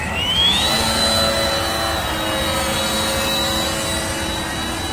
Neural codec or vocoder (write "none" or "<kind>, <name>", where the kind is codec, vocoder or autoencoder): none